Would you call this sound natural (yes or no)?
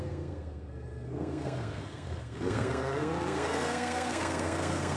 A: no